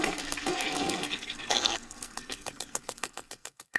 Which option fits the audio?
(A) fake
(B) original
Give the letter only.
A